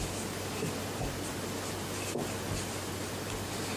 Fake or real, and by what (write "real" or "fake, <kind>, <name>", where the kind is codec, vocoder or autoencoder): real